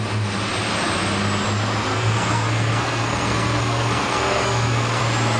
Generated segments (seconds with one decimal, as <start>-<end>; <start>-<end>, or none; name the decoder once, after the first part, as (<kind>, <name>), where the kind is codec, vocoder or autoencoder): 1.9-5.0 (codec, SNAC)